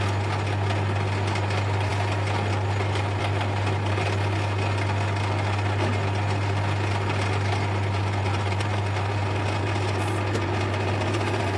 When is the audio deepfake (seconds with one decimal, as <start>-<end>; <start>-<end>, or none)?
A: none